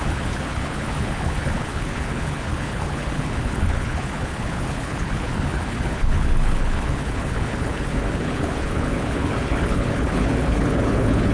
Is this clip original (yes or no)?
no